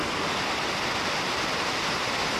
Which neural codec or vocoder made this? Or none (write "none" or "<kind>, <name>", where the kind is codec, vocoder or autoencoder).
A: none